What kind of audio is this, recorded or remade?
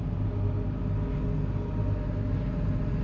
recorded